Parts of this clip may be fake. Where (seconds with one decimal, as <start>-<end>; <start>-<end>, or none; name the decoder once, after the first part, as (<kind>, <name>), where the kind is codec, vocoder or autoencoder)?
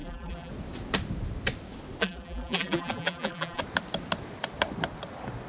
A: 0.0-0.5 (vocoder, BigVGAN v2); 2.0-3.6